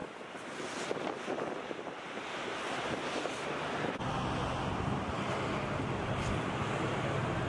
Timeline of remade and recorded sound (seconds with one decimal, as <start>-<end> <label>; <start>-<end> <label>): 0.0-7.5 recorded